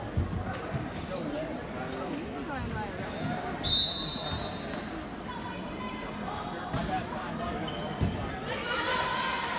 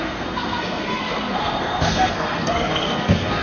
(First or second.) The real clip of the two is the first